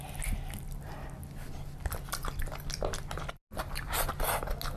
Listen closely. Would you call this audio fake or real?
real